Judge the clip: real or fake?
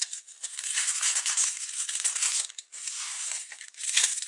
fake